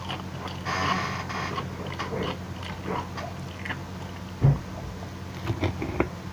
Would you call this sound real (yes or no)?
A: yes